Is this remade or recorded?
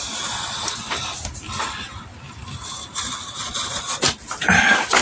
recorded